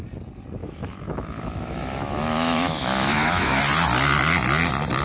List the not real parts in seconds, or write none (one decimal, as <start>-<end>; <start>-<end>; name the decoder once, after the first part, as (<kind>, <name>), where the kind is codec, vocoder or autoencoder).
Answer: 0.6-3.6 (autoencoder, DAC-VAE)

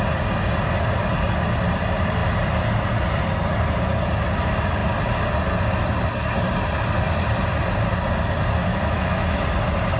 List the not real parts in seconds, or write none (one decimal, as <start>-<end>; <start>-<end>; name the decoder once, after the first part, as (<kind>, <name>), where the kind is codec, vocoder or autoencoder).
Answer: 8.7-9.4 (autoencoder, DAC-VAE)